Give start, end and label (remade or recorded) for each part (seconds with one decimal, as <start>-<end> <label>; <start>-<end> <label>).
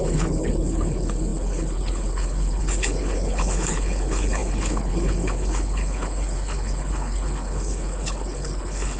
0.0-9.0 remade